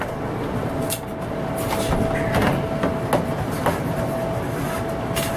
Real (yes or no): yes